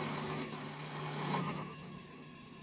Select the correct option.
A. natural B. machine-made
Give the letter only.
B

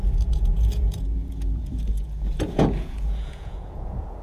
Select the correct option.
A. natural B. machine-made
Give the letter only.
B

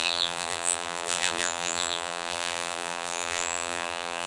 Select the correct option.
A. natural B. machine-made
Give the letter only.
B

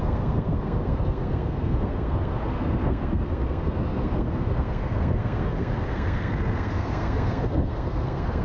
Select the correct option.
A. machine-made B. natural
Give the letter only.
A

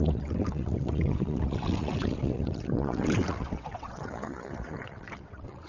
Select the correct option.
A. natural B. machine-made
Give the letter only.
B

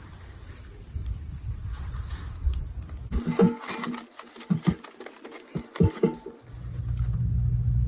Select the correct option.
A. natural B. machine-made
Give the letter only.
A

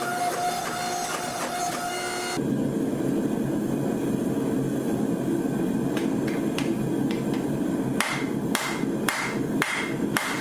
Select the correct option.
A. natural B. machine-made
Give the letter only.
A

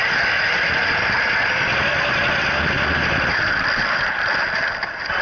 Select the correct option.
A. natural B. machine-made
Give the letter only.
A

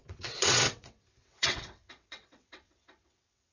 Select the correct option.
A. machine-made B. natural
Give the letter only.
A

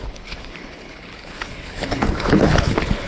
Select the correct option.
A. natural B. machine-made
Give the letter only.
B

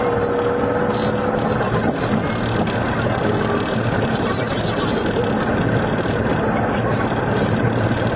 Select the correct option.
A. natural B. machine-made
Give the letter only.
A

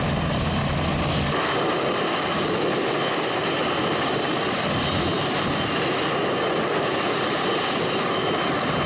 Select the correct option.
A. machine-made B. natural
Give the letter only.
B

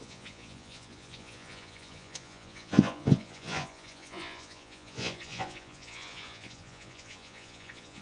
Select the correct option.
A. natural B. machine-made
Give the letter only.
B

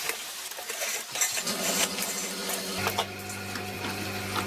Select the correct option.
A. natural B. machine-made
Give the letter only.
A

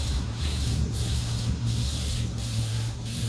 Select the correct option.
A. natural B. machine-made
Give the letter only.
B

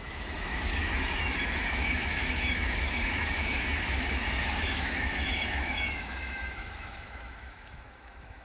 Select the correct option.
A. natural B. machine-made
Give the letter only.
B